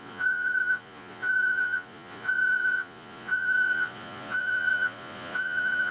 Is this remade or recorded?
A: remade